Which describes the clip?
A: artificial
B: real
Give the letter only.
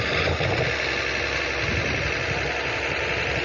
B